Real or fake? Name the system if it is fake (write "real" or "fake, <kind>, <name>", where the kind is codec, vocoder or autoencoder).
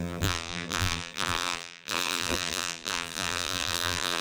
fake, vocoder, BigVGAN v2